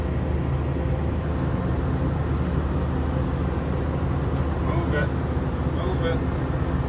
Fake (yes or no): no